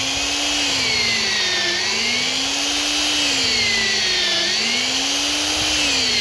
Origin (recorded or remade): recorded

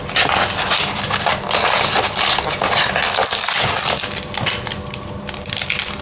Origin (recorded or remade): recorded